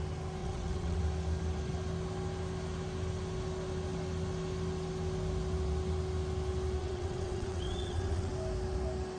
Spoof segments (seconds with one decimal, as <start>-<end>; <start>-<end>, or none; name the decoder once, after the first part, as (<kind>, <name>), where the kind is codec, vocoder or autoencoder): 0.4-1.0 (vocoder, WaveNeXt); 6.8-8.3